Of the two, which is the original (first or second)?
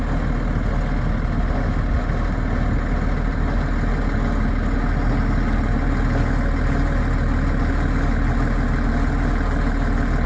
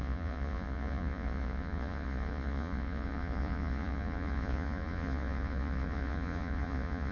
first